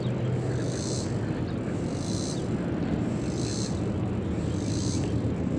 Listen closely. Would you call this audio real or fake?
real